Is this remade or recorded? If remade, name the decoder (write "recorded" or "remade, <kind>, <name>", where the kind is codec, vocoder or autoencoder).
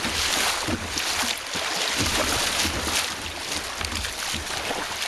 recorded